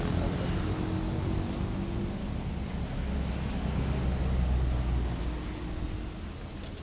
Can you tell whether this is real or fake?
real